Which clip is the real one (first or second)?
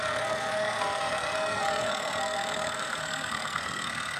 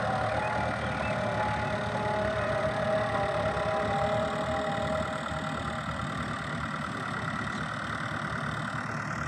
second